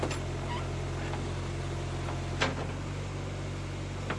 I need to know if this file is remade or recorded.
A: recorded